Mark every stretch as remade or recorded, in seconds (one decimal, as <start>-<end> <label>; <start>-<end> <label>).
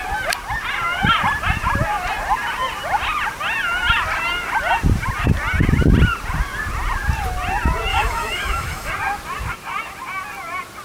0.0-7.9 recorded; 7.9-8.9 remade; 8.9-10.8 recorded